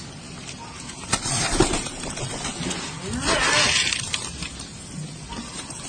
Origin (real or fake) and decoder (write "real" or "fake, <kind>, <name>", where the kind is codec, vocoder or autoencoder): real